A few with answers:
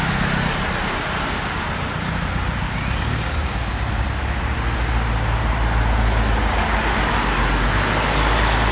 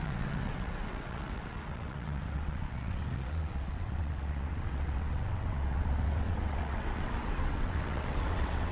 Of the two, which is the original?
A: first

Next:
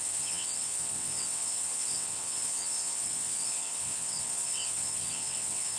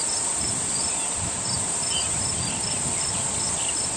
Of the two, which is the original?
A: second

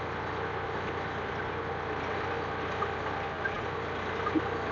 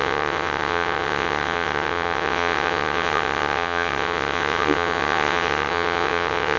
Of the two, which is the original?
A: first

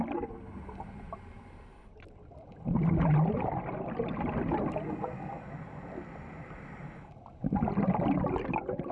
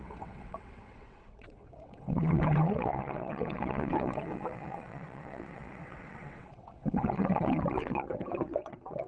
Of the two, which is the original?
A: first